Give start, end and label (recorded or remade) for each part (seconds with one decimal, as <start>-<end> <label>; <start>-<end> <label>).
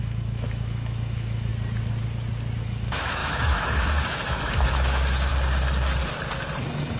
0.0-1.5 remade; 1.5-2.6 recorded; 2.6-5.3 remade; 5.3-6.6 recorded; 6.6-7.0 remade